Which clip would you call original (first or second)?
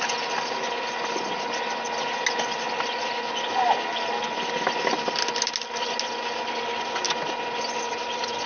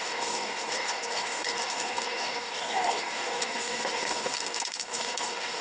first